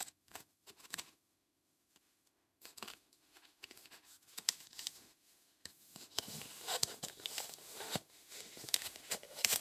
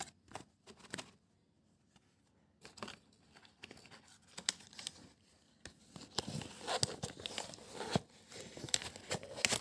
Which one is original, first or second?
second